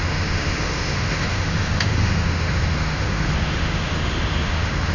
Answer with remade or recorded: remade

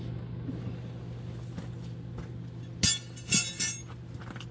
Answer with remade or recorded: recorded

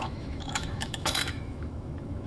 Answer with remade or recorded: remade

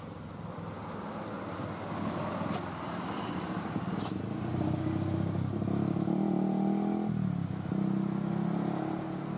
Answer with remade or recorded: recorded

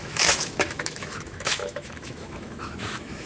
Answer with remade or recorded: remade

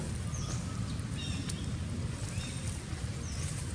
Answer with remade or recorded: recorded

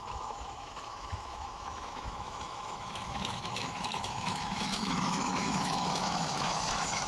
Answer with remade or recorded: remade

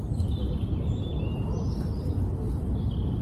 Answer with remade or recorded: recorded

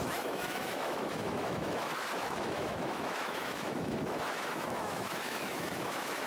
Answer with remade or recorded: remade